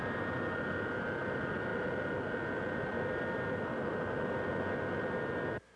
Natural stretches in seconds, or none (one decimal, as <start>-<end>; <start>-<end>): 0.0-5.8